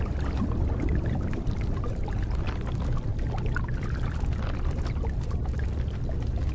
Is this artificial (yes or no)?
no